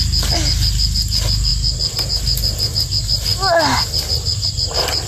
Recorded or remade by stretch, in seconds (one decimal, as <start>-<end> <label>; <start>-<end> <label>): 0.0-5.1 recorded